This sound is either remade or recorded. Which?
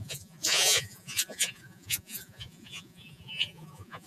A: remade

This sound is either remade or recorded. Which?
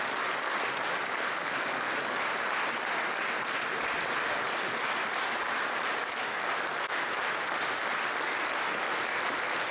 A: recorded